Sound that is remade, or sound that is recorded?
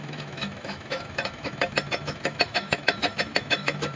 remade